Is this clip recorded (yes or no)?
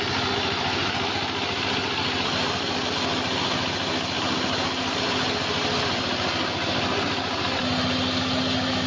yes